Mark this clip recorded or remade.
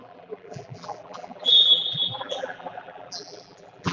remade